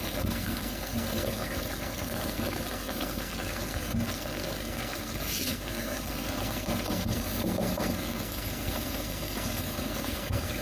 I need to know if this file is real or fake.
fake